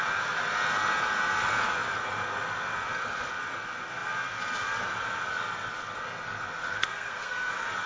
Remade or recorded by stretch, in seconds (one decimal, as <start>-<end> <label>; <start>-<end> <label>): 0.0-6.7 recorded; 6.7-7.5 remade; 7.5-7.9 recorded